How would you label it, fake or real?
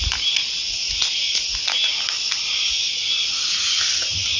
real